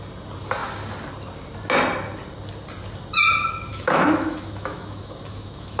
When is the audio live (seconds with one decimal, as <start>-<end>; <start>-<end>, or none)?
0.0-3.7